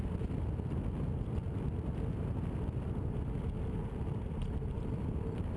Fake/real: real